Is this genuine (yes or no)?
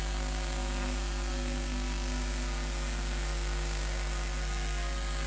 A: no